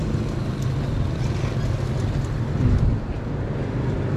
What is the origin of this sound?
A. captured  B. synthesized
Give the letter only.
A